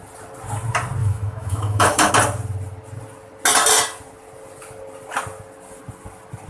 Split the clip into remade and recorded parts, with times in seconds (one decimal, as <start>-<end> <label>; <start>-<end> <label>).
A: 0.0-1.0 recorded; 1.0-2.1 remade; 2.1-6.5 recorded